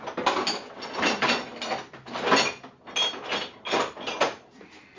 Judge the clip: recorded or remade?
recorded